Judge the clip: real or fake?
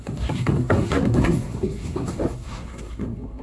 fake